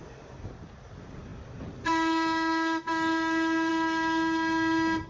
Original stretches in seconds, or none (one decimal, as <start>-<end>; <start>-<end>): 0.0-5.1